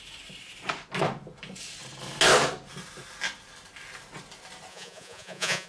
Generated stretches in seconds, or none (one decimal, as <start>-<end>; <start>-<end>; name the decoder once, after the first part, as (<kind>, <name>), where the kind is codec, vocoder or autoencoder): 4.7-5.7 (vocoder, Vocos)